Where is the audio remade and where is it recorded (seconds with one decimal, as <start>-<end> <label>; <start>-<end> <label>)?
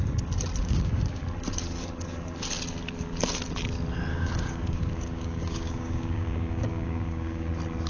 0.0-0.6 recorded; 0.6-1.2 remade; 1.2-4.1 recorded; 4.1-7.5 remade; 7.5-7.9 recorded